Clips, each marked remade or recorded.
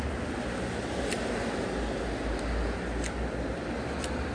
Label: recorded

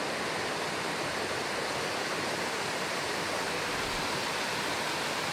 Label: recorded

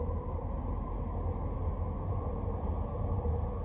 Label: recorded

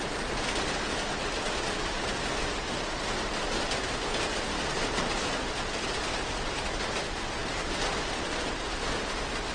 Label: recorded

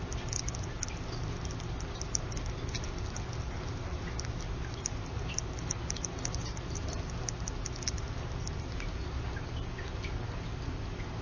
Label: recorded